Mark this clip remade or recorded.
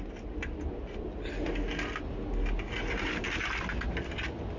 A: recorded